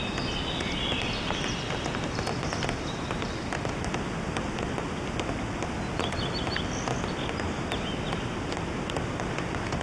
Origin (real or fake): real